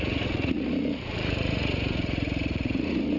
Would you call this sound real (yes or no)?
no